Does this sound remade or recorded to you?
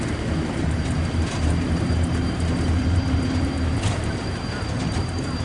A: remade